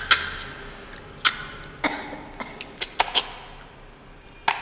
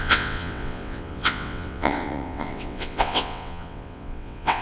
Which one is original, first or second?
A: first